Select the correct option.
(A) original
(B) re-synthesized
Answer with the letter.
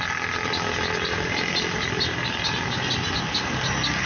A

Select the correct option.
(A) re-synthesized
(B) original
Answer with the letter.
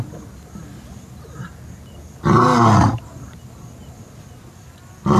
B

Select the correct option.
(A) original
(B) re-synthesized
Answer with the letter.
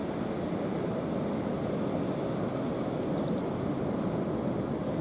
A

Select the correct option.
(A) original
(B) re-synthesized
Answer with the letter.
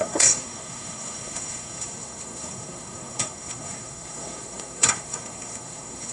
B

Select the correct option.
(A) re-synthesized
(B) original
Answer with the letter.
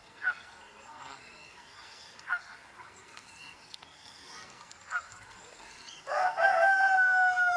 A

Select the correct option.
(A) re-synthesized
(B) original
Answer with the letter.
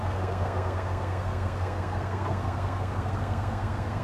A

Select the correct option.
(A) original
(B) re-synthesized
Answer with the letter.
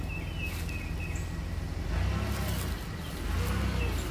A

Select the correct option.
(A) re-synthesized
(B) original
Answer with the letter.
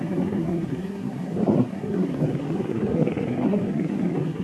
A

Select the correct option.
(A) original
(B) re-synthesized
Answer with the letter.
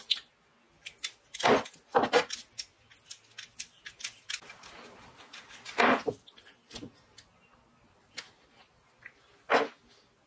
A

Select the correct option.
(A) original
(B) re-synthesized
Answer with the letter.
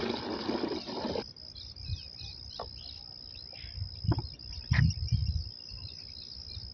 A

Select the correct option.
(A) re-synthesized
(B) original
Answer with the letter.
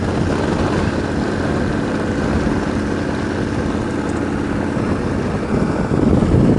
B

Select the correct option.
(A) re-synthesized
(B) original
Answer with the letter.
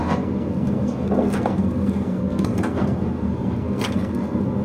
A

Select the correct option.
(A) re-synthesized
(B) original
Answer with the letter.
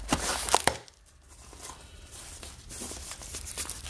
B